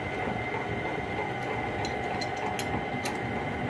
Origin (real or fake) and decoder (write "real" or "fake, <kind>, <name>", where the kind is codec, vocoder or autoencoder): real